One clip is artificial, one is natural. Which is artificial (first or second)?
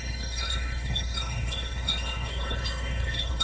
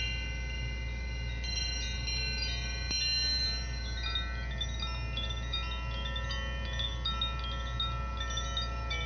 first